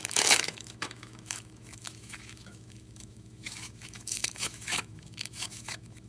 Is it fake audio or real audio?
fake